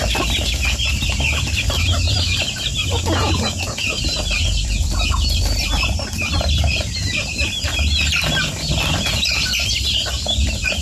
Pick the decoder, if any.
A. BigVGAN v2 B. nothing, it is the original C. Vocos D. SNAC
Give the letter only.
A